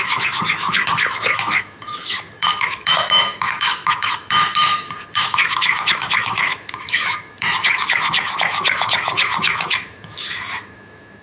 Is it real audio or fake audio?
fake